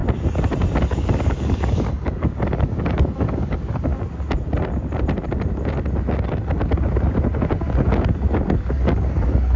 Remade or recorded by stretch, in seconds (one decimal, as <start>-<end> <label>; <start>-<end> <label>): 0.0-0.8 recorded; 0.8-3.9 remade; 3.9-8.3 recorded; 8.3-9.6 remade